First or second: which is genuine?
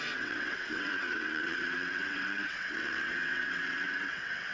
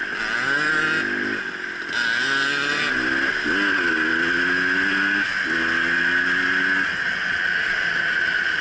second